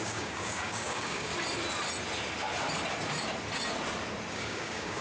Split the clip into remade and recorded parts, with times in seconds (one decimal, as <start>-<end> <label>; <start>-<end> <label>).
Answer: 0.0-1.3 remade; 1.3-4.3 recorded; 4.3-5.0 remade